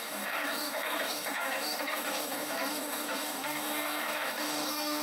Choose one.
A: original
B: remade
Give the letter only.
B